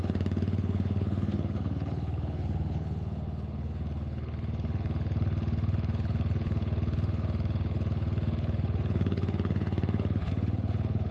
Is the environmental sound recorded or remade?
remade